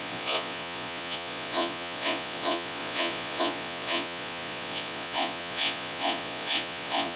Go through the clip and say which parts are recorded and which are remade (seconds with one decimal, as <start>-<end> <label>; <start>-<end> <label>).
0.0-7.2 remade